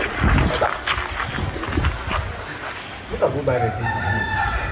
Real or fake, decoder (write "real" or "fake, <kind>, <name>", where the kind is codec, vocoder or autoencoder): real